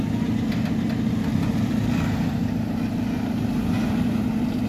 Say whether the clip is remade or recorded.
recorded